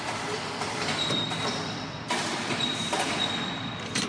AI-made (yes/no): yes